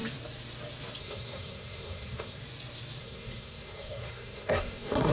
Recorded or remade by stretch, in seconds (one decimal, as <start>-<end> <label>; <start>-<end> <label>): 0.0-1.0 recorded; 1.0-2.4 remade; 2.4-3.0 recorded; 3.0-5.1 remade

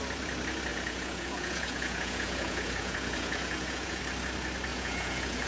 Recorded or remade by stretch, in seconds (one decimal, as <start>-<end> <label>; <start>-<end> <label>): 0.0-0.7 recorded; 0.7-4.0 remade; 4.0-4.7 recorded; 4.7-5.5 remade

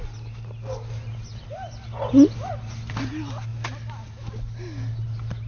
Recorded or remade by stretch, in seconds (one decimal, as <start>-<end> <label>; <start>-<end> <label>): 0.0-5.5 recorded

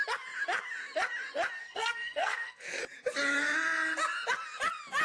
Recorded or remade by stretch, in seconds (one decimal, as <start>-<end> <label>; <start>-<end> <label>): 0.0-1.6 recorded; 1.6-2.8 remade; 2.8-5.0 recorded

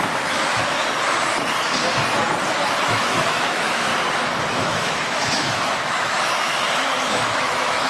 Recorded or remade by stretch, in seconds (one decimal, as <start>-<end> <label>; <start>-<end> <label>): 0.0-0.8 remade; 0.8-2.9 recorded; 2.9-3.9 remade; 3.9-4.5 recorded; 4.5-7.9 remade